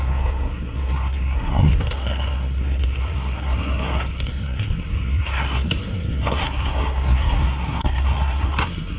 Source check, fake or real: fake